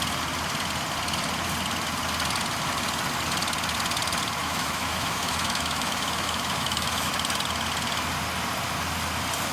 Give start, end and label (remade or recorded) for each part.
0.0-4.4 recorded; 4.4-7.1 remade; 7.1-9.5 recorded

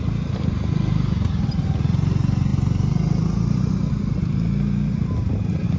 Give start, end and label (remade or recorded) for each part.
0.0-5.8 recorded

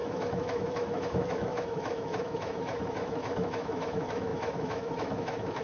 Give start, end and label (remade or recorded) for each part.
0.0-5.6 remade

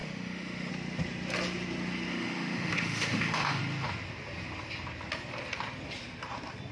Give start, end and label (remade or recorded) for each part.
0.0-0.7 remade; 0.7-2.1 recorded; 2.1-3.6 remade; 3.6-6.7 recorded

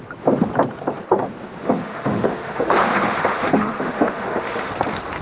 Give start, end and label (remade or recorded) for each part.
0.0-1.6 recorded; 1.6-4.7 remade; 4.7-5.2 recorded

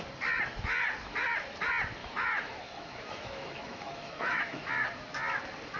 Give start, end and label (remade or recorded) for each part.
0.0-2.0 recorded; 2.0-4.7 remade; 4.7-5.8 recorded

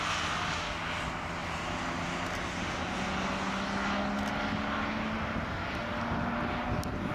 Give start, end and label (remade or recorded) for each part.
0.0-7.1 recorded